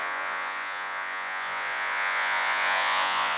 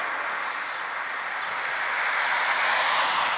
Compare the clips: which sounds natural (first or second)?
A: second